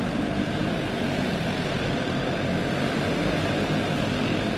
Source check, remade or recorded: recorded